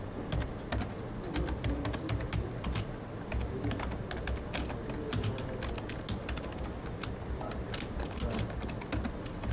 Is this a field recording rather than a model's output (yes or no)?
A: yes